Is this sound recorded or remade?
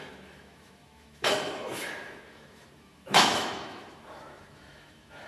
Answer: remade